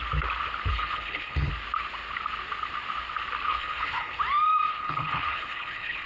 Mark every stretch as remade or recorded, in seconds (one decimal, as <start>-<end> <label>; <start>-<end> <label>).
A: 0.0-0.7 recorded; 0.7-1.5 remade; 1.5-3.5 recorded; 3.5-4.2 remade; 4.2-4.7 recorded; 4.7-6.1 remade